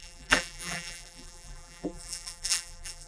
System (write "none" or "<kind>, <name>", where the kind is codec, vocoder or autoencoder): vocoder, BigVGAN v2